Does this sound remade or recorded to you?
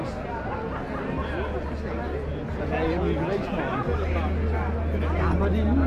recorded